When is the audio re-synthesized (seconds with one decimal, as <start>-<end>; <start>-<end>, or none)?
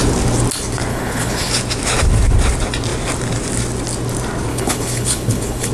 0.9-1.5; 4.5-5.7